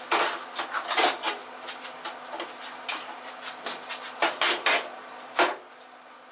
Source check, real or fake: real